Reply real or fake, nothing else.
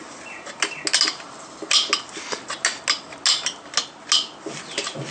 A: real